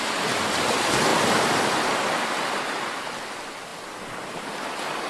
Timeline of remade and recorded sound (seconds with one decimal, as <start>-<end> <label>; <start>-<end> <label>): 0.0-5.1 recorded